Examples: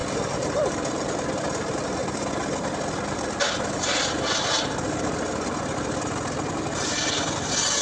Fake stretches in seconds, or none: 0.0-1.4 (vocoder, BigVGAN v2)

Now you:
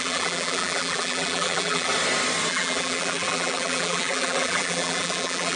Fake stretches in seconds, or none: 0.0-1.9 (vocoder, BigVGAN v2); 2.5-5.6

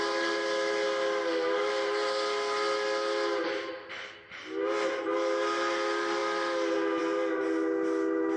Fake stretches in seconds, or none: none

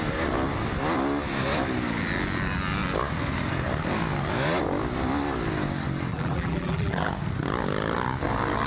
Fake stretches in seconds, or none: 6.1-7.1 (vocoder, BigVGAN v2)

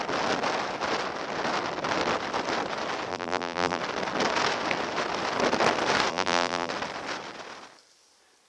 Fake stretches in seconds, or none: 3.1-3.8 (vocoder, BigVGAN v2); 6.1-6.7

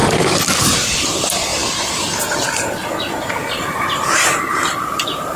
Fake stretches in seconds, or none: 0.6-1.5 (vocoder, BigVGAN v2); 2.2-2.8; 3.5-5.4

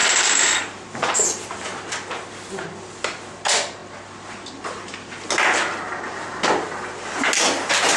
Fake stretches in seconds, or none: 0.0-1.7 (vocoder, BigVGAN v2); 3.0-3.8; 5.7-8.0

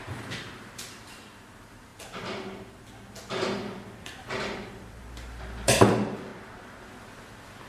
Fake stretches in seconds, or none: 0.0-1.9 (vocoder, BigVGAN v2); 2.7-7.7